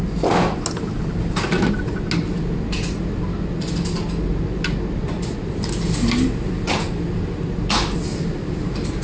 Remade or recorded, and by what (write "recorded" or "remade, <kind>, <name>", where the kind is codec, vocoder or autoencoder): recorded